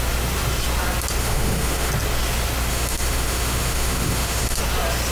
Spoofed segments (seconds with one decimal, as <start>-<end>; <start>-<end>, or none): 1.2-1.9; 2.7-4.6